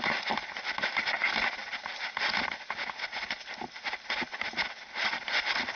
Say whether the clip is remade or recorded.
recorded